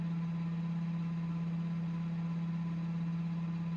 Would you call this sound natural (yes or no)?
yes